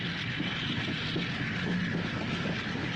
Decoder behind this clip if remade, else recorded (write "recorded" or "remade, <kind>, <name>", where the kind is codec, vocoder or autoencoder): recorded